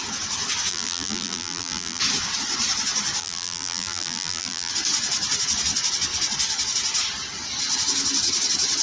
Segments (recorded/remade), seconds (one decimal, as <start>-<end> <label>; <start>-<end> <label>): 0.0-0.7 recorded; 0.7-2.0 remade; 2.0-3.2 recorded; 3.2-4.7 remade; 4.7-8.8 recorded